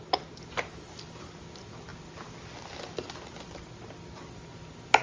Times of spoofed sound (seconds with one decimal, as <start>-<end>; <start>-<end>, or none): none